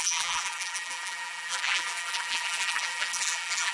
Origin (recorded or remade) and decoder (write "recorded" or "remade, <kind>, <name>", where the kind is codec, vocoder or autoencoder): remade, vocoder, BigVGAN v2